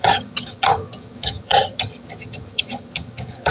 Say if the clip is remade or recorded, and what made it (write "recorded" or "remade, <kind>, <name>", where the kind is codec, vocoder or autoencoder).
remade, vocoder, HiFi-GAN